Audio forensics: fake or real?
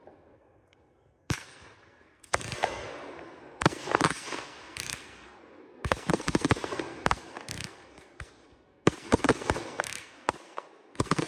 fake